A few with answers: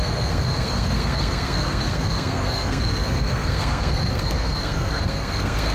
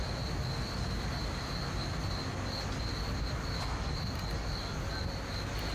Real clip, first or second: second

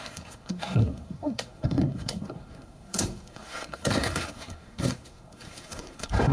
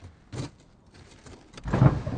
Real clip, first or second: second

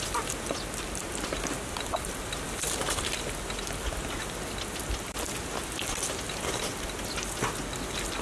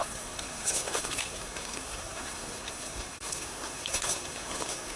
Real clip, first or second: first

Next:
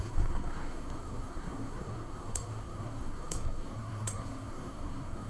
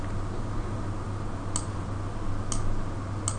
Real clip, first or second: second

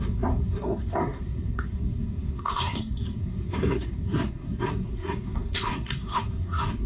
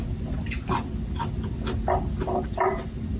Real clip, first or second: second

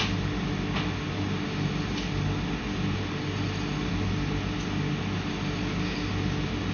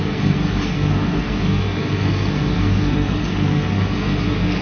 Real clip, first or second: first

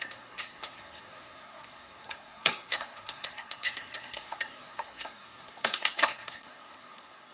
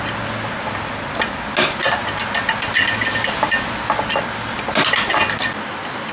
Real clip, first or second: second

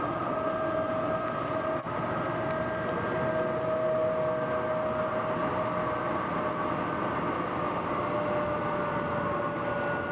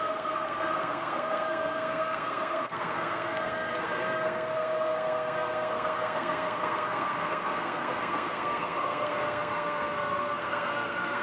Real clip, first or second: first